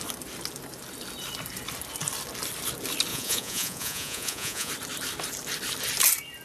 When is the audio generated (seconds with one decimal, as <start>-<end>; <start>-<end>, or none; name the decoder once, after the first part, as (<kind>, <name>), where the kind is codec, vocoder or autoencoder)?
3.1-4.7 (vocoder, Vocos)